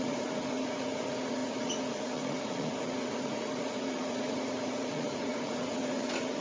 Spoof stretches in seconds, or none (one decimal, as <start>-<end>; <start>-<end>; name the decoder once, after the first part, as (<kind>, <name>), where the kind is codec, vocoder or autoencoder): 0.0-6.4 (vocoder, Vocos)